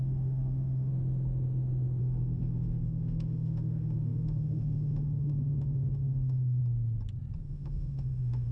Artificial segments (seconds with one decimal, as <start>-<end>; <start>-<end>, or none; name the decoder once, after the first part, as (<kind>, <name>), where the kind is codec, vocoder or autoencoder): 0.0-0.9 (autoencoder, DAC-VAE); 2.0-6.6; 7.4-8.5